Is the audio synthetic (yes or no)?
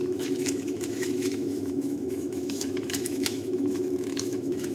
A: yes